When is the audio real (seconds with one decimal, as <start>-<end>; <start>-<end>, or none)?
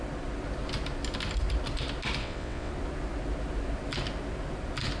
0.0-2.2; 2.7-5.0